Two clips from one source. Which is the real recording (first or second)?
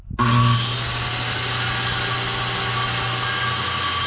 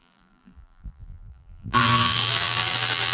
first